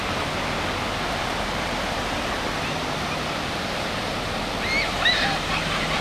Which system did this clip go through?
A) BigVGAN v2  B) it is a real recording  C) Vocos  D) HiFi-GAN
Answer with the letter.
B